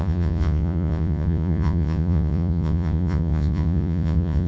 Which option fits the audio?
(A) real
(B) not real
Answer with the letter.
B